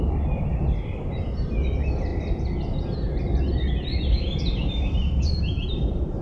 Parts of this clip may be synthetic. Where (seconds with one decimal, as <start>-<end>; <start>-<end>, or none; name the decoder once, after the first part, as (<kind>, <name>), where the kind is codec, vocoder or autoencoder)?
0.0-2.1 (vocoder, BigVGAN v2); 3.7-6.2

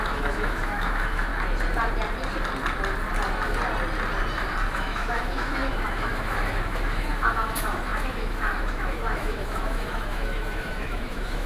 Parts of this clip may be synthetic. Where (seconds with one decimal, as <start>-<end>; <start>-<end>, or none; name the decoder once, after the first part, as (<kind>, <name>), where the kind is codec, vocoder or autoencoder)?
0.0-1.3 (autoencoder, DAC-VAE); 4.7-11.5

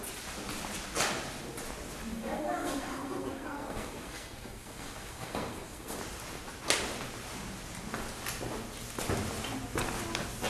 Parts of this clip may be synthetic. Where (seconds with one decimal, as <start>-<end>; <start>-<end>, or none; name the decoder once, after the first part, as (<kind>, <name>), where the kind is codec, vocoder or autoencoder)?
2.1-6.0 (codec, SNAC)

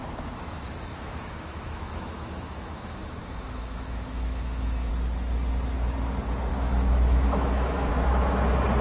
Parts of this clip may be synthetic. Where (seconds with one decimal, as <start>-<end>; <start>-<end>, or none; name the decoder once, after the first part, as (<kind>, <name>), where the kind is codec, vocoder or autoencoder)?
0.0-4.9 (autoencoder, DAC-VAE); 6.5-7.9

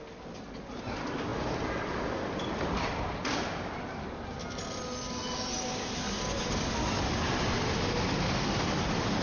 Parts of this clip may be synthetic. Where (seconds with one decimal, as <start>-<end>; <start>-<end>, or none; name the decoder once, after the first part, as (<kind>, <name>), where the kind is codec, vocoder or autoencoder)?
none

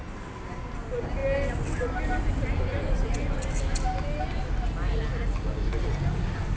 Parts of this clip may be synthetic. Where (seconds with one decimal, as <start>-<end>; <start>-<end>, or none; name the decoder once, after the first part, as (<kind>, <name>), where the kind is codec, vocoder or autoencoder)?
none